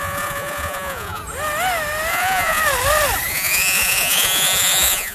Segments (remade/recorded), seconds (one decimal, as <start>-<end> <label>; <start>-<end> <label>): 0.0-1.2 remade; 1.2-2.1 recorded; 2.1-2.6 remade; 2.6-3.3 recorded; 3.3-5.1 remade